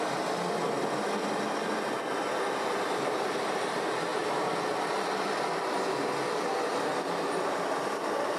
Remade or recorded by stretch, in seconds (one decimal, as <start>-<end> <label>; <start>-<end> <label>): 0.0-8.4 recorded